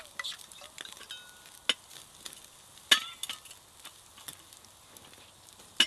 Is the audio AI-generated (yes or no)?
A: no